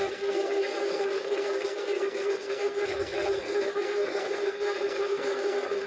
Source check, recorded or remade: remade